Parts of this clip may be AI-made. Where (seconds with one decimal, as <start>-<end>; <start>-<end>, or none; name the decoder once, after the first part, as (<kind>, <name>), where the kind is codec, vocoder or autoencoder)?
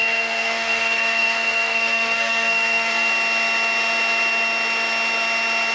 0.0-3.1 (codec, SNAC)